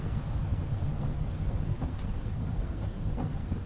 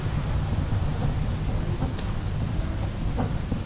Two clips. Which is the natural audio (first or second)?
second